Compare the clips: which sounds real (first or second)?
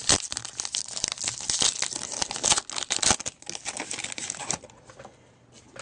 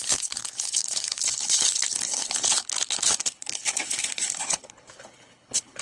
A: first